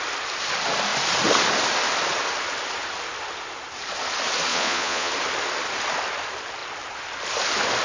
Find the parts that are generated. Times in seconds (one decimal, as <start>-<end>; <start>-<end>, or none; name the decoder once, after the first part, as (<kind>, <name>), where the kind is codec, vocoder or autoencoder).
4.5-5.1 (vocoder, Vocos)